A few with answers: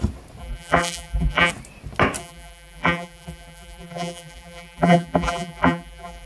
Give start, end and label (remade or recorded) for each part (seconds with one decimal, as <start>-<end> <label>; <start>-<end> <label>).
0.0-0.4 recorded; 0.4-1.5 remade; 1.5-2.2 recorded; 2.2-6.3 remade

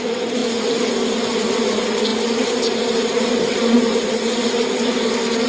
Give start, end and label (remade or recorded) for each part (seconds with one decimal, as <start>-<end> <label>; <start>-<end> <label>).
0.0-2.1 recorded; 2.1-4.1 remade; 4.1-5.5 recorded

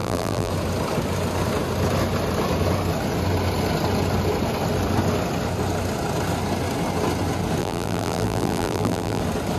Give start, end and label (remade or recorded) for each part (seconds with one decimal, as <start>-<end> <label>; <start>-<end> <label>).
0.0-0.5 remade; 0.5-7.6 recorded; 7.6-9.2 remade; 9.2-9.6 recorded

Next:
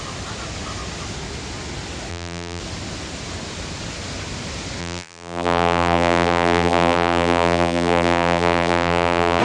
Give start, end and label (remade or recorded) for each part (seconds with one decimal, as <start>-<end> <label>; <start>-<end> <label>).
0.0-2.1 recorded; 2.1-2.6 remade; 2.6-4.8 recorded; 4.8-9.4 remade

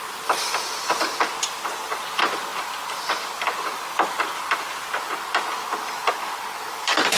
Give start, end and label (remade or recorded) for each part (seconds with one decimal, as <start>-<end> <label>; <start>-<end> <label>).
0.0-5.1 remade; 5.1-6.7 recorded; 6.7-7.2 remade

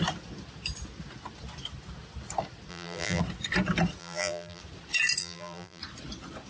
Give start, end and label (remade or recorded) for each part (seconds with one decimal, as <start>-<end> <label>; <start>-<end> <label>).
0.0-2.7 recorded; 2.7-3.2 remade; 3.2-4.0 recorded; 4.0-4.6 remade; 4.6-5.2 recorded; 5.2-5.8 remade; 5.8-6.5 recorded

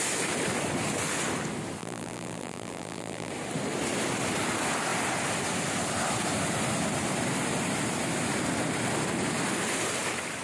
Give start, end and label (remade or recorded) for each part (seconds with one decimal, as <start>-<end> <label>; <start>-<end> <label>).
0.0-1.8 recorded; 1.8-3.3 remade; 3.3-10.4 recorded